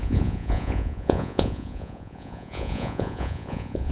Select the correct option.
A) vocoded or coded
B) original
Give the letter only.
A